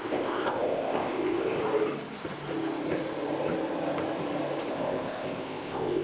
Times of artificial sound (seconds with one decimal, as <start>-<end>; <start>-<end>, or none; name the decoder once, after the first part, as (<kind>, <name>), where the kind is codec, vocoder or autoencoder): 0.0-1.6 (codec, ZipCodec); 4.7-6.0